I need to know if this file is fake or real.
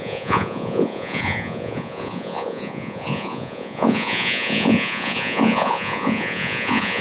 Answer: fake